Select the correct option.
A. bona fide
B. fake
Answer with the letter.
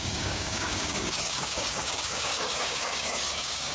B